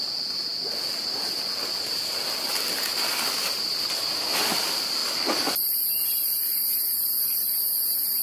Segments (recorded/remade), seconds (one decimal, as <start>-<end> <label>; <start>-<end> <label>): 0.0-8.2 recorded